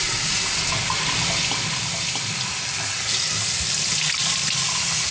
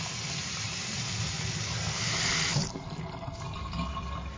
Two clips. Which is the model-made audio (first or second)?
second